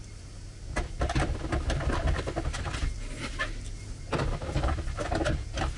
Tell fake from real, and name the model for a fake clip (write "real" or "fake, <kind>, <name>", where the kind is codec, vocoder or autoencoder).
real